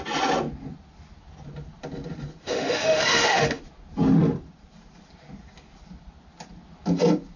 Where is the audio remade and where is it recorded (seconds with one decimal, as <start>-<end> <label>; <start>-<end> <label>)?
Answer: 0.0-2.4 recorded; 2.4-3.6 remade; 3.6-7.4 recorded